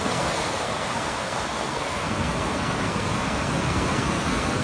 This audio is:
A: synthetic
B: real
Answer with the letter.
A